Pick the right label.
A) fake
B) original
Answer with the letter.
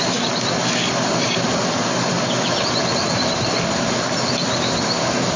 B